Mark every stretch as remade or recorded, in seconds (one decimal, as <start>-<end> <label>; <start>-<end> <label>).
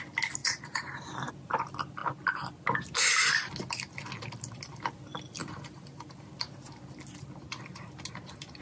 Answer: 0.0-0.4 recorded; 0.4-1.3 remade; 1.3-5.4 recorded; 5.4-6.3 remade; 6.3-8.6 recorded